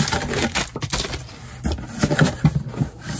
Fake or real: real